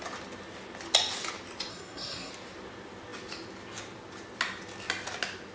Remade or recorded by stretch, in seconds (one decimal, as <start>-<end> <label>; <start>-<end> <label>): 0.0-1.7 recorded; 1.7-2.3 remade; 2.3-5.5 recorded